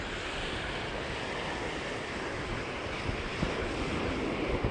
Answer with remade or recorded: recorded